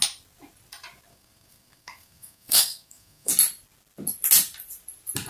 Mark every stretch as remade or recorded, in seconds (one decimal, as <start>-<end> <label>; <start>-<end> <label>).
0.0-1.1 recorded; 1.1-3.3 remade; 3.3-5.3 recorded